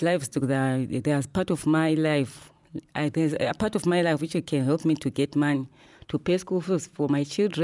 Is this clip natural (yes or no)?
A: no